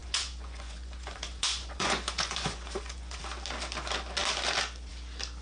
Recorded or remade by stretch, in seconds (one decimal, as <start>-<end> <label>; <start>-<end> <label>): 0.0-3.2 remade; 3.2-5.4 recorded